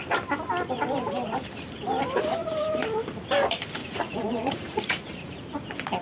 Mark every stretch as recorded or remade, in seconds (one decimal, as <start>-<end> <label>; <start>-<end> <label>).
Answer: 0.0-3.8 recorded; 3.8-5.4 remade; 5.4-6.0 recorded